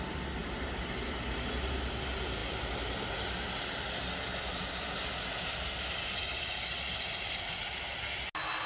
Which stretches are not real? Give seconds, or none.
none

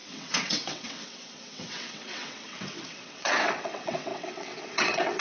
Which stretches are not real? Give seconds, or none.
0.0-5.2 (vocoder, WaveNeXt)

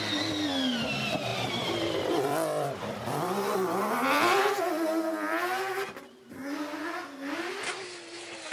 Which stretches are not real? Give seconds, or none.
1.3-5.6 (vocoder, BigVGAN v2)

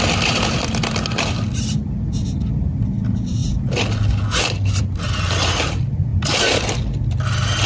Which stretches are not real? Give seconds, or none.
none

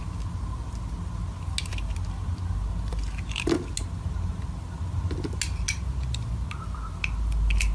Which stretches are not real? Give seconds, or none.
none

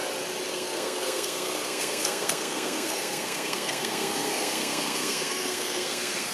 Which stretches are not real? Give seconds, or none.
0.5-6.3 (codec, SNAC)

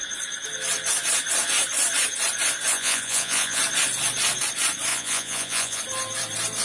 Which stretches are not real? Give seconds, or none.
2.7-3.6 (vocoder, Vocos); 4.9-5.8

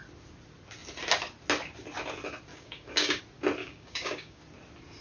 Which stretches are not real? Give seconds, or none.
2.5-3.2 (codec, DAC); 3.6-4.4